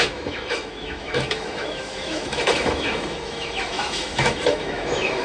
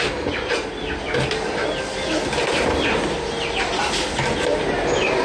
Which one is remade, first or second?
first